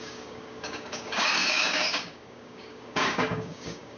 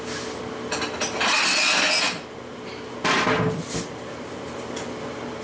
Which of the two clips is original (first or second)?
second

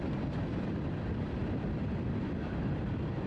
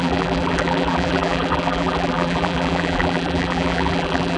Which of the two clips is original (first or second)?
first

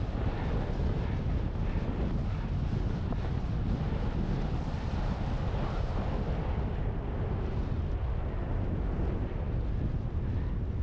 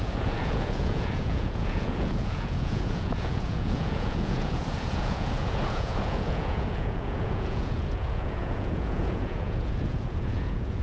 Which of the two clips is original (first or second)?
first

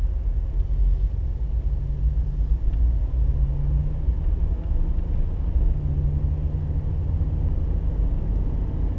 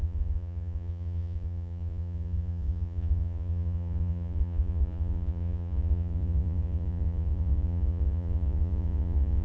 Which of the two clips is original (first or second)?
first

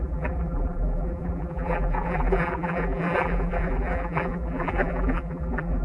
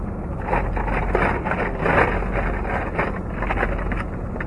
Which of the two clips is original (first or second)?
second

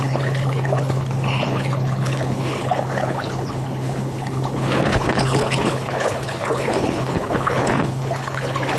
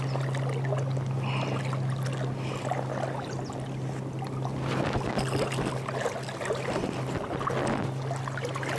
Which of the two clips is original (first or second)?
second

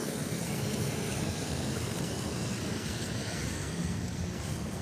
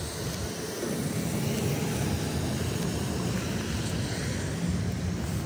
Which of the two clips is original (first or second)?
second